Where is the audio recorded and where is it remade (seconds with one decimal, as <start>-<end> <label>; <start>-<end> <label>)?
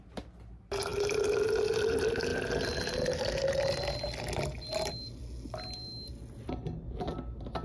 0.0-7.6 recorded